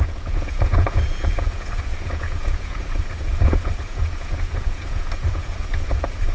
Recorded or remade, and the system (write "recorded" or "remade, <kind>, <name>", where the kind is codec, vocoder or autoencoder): remade, vocoder, Vocos